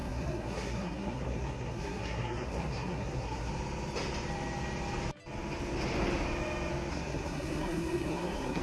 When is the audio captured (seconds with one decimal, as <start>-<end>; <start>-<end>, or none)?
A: 3.5-6.9